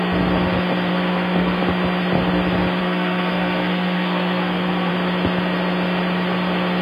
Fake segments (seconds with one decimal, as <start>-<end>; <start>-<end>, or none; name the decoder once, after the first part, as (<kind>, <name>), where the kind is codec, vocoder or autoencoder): 0.9-1.6 (codec, SNAC); 2.8-4.9